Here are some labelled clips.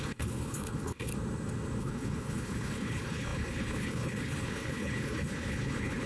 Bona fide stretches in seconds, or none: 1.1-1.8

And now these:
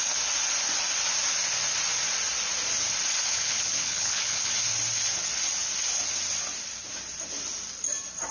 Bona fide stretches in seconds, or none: 0.0-3.3; 4.5-8.3

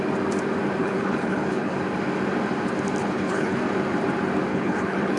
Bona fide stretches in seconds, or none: 0.0-0.8; 1.8-3.0; 3.6-4.5

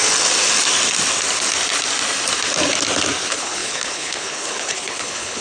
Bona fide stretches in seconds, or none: 0.0-3.2

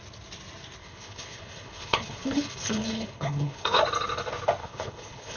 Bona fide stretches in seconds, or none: 0.0-0.8; 3.8-4.6

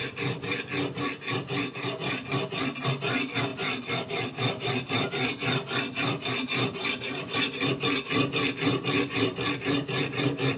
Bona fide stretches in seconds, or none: 0.0-10.6

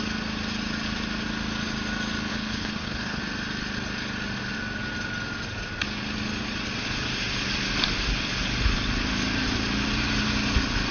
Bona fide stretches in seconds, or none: 0.0-2.3; 3.2-10.9

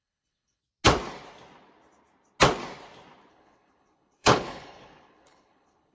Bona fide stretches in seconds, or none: 0.6-3.3